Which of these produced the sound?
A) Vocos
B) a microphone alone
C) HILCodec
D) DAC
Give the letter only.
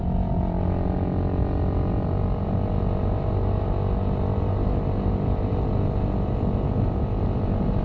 B